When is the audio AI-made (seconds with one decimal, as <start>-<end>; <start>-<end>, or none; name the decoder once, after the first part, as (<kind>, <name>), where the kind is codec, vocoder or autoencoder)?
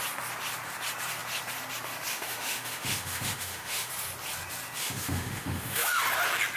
2.1-3.9 (autoencoder, DAC-VAE); 4.8-6.0